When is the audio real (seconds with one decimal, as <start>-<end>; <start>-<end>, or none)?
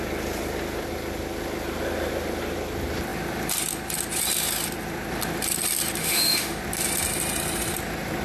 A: 0.0-6.0; 6.6-8.2